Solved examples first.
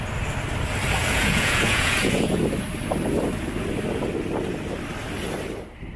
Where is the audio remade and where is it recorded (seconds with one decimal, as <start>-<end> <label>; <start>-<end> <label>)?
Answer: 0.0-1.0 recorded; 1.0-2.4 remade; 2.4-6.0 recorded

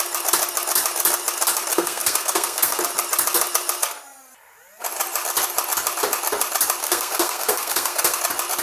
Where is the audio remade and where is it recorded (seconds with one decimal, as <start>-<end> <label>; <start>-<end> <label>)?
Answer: 0.0-1.7 recorded; 1.7-2.8 remade; 2.8-6.8 recorded; 6.8-8.2 remade; 8.2-8.6 recorded

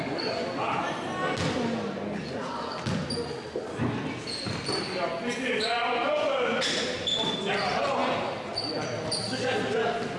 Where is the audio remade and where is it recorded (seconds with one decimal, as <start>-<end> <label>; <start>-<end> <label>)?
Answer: 0.0-8.0 recorded; 8.0-9.1 remade; 9.1-10.2 recorded

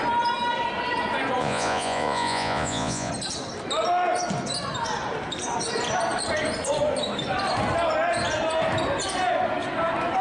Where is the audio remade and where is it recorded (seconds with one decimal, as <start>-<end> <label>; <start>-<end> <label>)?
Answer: 0.0-1.4 recorded; 1.4-3.1 remade; 3.1-10.2 recorded

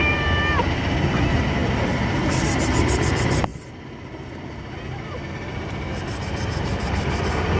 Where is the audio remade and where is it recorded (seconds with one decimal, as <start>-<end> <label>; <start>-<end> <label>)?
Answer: 0.0-7.6 recorded